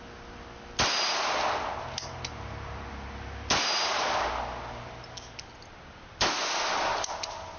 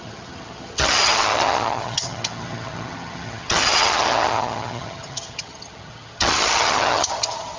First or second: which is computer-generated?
second